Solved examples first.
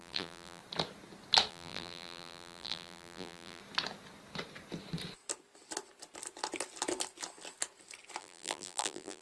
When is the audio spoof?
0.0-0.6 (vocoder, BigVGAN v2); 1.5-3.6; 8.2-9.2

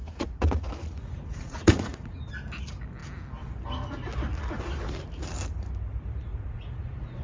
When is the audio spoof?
0.0-2.3 (vocoder, Vocos); 6.3-7.2

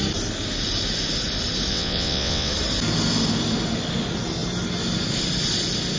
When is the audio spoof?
1.7-2.5 (vocoder, WaveNeXt)

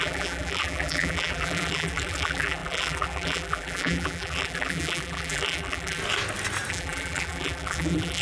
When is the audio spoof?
0.0-6.0 (vocoder, BigVGAN v2); 6.7-8.2